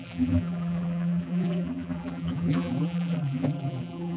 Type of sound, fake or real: fake